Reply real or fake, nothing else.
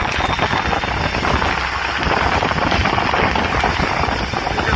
real